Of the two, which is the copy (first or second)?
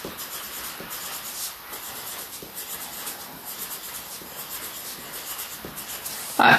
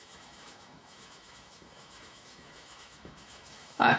second